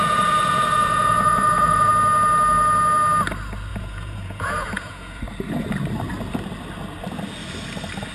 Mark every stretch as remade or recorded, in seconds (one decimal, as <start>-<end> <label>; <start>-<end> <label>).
0.0-1.9 remade; 1.9-3.7 recorded; 3.7-5.2 remade; 5.2-8.1 recorded